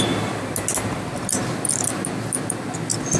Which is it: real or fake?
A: real